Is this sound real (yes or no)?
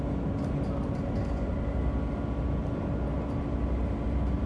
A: yes